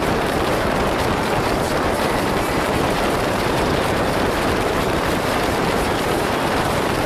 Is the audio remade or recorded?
remade